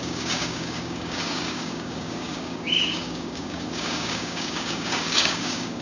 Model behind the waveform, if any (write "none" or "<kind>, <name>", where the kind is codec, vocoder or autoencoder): codec, DAC